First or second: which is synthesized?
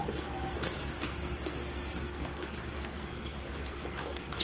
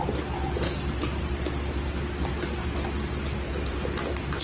first